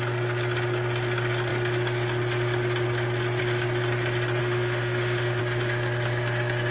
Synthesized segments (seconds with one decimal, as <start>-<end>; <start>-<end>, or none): 4.4-5.4